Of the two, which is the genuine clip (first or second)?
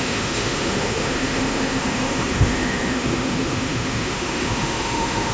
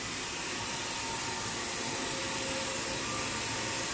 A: second